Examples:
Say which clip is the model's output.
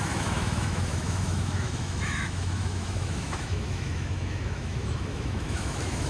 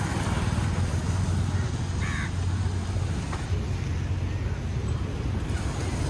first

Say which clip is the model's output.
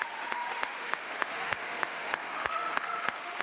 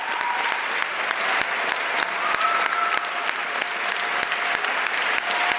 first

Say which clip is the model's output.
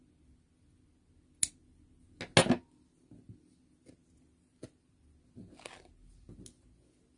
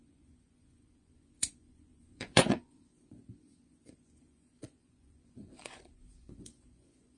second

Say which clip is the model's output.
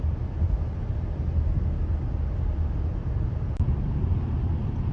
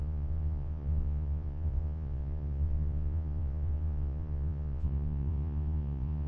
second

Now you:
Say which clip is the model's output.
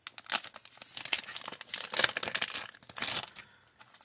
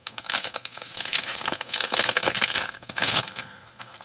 second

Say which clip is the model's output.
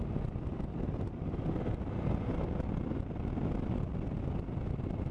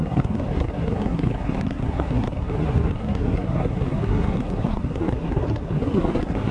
second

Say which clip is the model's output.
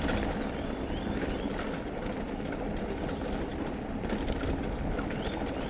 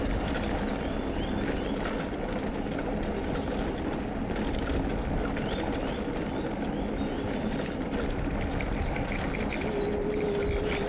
first